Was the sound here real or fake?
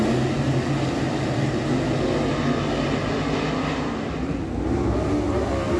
real